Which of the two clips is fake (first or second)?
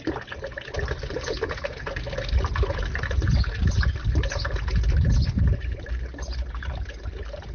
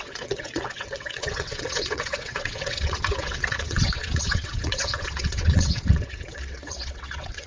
second